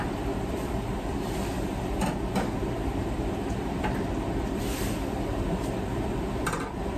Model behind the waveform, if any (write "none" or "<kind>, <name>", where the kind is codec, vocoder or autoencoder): vocoder, BigVGAN v2